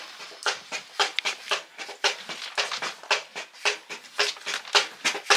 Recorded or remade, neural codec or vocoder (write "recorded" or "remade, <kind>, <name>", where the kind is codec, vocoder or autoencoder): recorded